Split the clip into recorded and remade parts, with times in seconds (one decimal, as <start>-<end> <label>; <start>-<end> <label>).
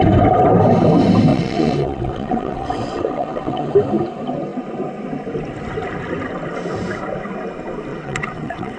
0.0-1.3 recorded; 1.3-3.7 remade; 3.7-7.9 recorded; 7.9-8.8 remade